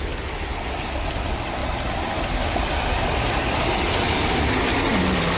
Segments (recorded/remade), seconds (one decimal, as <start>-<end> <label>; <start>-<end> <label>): 0.0-5.4 recorded